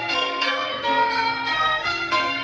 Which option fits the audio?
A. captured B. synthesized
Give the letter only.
B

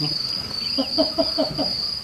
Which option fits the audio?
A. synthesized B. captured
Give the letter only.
B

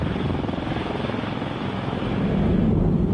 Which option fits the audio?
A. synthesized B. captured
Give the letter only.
B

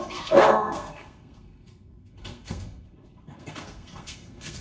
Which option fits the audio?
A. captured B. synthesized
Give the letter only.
B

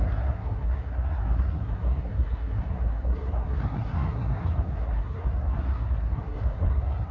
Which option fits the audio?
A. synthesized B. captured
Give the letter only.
A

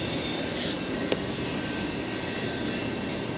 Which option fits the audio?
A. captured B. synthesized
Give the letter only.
A